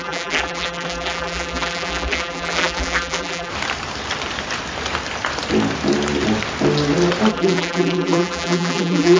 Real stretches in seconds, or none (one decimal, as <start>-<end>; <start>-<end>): 3.5-7.3